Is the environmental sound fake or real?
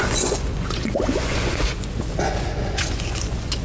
fake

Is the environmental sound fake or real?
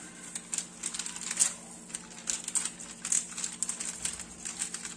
real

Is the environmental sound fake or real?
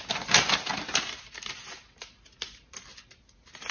real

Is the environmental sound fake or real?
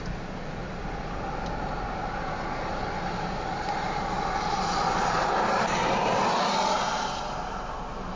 real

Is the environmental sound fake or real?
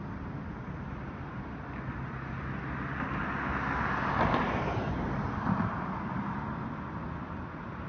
real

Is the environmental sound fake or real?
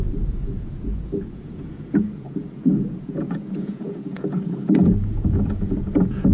fake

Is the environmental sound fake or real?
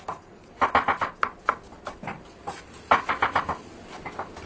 real